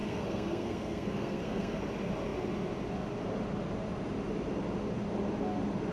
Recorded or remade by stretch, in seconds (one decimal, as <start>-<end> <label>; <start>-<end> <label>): 0.0-1.8 remade; 1.8-5.9 recorded